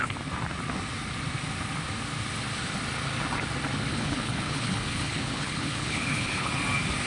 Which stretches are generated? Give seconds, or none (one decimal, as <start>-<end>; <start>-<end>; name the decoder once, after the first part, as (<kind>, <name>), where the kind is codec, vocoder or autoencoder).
3.9-6.5 (codec, HILCodec)